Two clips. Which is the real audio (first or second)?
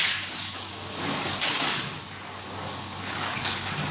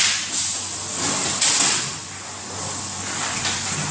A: second